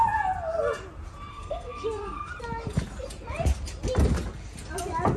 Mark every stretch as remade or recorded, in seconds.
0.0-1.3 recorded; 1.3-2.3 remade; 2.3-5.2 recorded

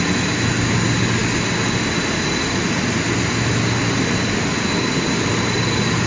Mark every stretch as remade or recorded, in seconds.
0.0-6.1 recorded

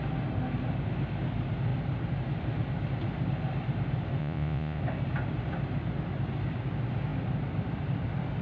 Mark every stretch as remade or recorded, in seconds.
0.0-4.2 recorded; 4.2-4.8 remade; 4.8-8.4 recorded

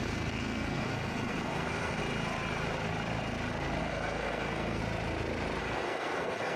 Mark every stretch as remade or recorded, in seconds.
0.0-2.0 remade; 2.0-3.8 recorded; 3.8-4.8 remade; 4.8-5.6 recorded; 5.6-6.6 remade